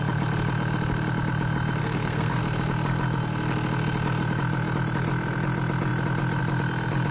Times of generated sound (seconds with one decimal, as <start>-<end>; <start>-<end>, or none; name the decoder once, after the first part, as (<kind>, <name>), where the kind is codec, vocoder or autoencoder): 1.8-2.4 (codec, SNAC)